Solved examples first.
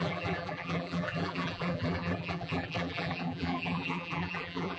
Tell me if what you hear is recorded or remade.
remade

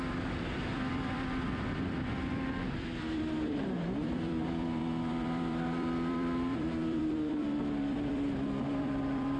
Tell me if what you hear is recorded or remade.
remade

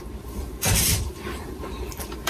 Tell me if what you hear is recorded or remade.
remade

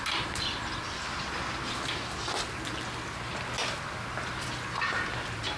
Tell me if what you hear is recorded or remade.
recorded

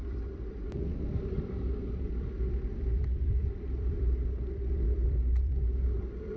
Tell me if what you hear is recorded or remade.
remade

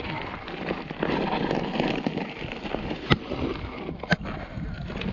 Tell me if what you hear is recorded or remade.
recorded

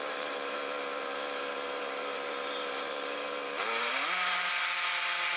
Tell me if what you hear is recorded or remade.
remade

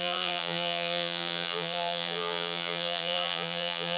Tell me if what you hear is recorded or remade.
remade